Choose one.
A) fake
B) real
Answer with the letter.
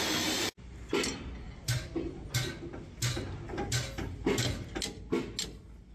B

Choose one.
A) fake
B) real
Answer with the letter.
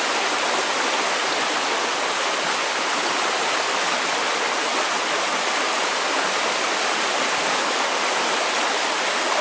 B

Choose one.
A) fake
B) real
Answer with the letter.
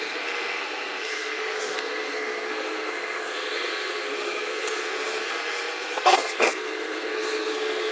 A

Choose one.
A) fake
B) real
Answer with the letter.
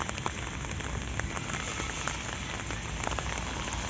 B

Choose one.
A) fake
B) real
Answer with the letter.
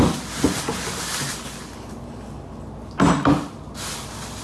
B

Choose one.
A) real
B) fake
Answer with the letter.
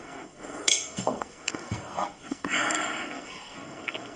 B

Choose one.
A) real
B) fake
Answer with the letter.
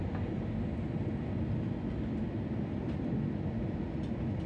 A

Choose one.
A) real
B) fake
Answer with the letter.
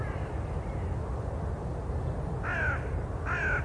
A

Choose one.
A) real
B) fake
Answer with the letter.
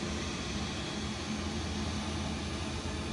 A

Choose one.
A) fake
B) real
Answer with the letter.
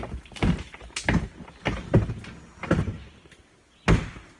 B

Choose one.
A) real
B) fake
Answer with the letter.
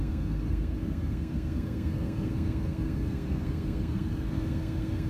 B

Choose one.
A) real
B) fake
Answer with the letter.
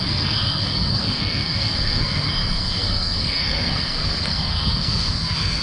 B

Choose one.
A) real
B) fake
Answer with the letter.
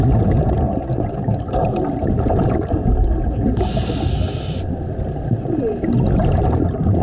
A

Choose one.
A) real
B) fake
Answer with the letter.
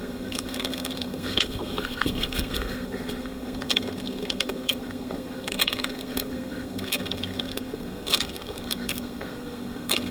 B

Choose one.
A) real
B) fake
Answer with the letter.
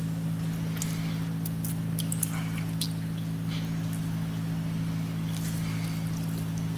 A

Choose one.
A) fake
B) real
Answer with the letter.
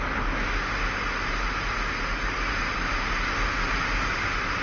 B